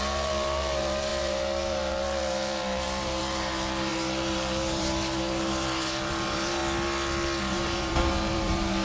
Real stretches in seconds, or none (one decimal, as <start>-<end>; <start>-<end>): 6.6-7.4